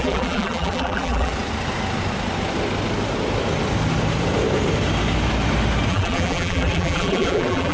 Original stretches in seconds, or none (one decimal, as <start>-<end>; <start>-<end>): 1.3-5.9